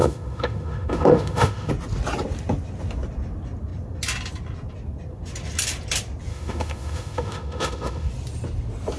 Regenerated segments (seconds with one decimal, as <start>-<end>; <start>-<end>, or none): 0.0-1.7; 6.3-8.1